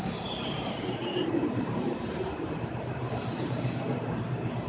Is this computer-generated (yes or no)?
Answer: yes